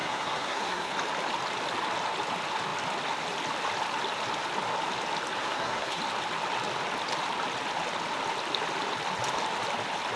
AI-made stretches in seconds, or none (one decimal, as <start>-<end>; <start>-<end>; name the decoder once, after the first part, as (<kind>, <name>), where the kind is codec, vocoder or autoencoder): 0.0-0.9 (codec, SNAC); 5.4-6.0